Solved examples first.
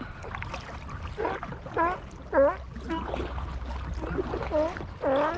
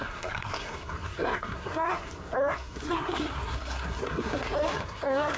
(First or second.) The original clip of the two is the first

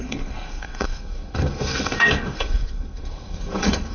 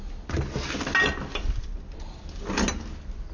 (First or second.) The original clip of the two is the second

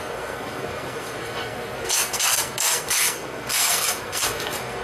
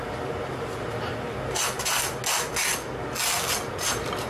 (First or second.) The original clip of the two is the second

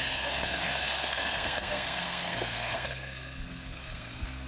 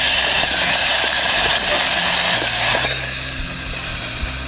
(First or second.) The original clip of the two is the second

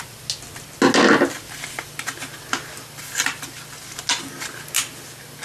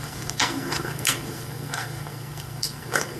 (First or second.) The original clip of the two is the first